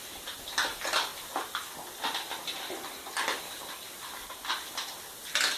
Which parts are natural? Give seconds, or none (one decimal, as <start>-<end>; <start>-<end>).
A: 0.0-5.6